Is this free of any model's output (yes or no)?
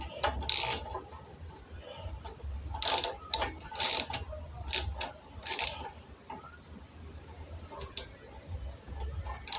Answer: yes